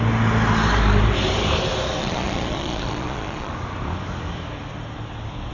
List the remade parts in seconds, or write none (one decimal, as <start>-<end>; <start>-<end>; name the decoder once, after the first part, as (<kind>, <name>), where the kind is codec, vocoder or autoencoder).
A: 2.0-3.5 (vocoder, Vocos)